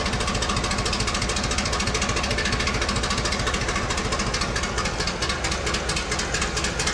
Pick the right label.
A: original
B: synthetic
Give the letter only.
A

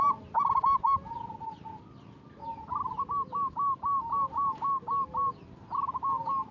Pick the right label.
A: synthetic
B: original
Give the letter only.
B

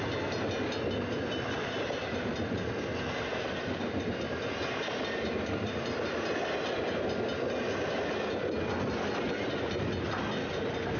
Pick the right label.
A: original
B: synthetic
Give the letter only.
A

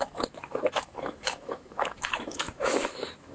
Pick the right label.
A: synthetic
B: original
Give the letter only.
A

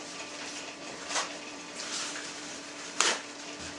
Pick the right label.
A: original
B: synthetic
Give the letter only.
B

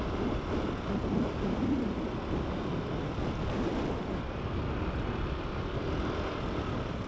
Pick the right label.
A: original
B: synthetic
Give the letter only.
A